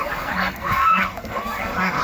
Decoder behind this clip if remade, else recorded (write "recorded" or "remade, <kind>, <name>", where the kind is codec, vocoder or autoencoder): remade, codec, SNAC